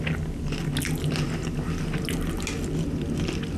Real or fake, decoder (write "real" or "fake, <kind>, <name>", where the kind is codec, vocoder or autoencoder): real